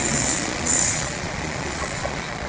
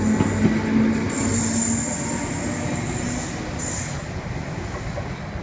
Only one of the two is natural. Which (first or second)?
second